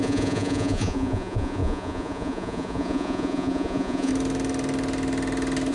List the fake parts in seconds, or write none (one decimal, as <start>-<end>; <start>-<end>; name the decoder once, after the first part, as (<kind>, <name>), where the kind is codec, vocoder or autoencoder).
0.0-4.1 (vocoder, Vocos)